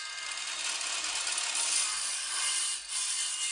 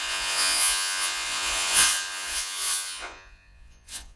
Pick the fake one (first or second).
second